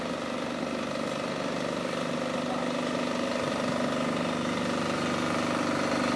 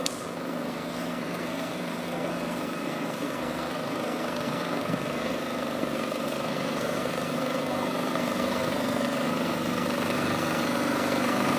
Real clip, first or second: first